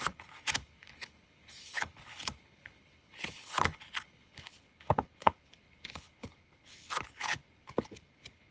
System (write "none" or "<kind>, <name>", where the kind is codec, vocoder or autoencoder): codec, HILCodec